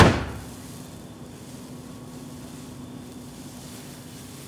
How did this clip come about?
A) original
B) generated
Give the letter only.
A